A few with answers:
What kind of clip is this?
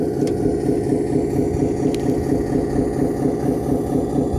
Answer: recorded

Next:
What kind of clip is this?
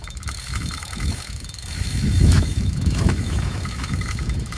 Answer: remade